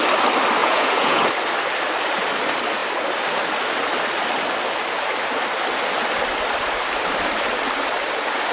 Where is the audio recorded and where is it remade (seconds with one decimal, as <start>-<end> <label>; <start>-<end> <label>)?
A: 0.0-0.6 recorded; 0.6-1.2 remade; 1.2-8.5 recorded